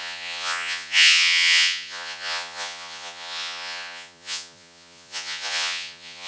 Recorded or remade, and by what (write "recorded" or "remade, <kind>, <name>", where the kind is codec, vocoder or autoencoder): remade, vocoder, Vocos